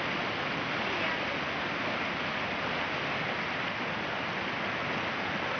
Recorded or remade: recorded